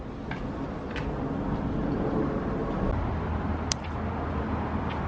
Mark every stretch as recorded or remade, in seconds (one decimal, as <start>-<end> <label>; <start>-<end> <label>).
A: 0.0-5.1 recorded